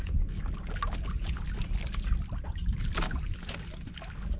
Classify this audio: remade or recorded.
recorded